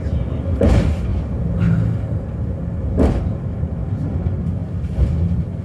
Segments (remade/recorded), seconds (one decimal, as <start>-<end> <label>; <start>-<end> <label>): 0.0-5.6 recorded